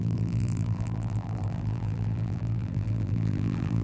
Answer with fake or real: fake